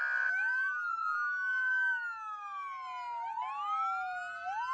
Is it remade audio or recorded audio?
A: recorded